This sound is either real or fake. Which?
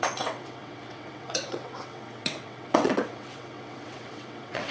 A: fake